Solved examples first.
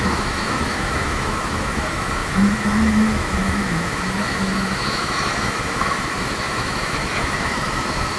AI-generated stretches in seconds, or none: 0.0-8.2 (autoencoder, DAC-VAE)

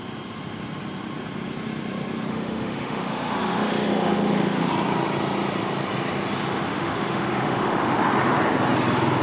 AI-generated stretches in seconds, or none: 2.3-4.7 (autoencoder, DAC-VAE); 6.7-8.0